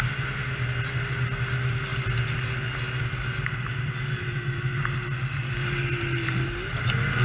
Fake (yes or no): no